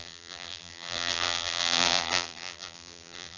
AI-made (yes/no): yes